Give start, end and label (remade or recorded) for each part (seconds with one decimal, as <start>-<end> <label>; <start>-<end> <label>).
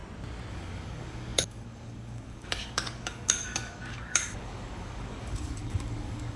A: 0.0-0.5 recorded; 0.5-6.4 remade